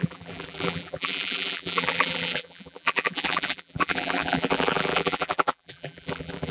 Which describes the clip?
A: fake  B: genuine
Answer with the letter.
A